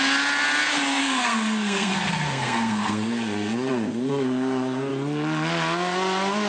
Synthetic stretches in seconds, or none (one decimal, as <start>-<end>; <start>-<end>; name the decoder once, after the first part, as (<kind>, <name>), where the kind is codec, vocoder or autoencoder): 1.0-4.9 (codec, SNAC)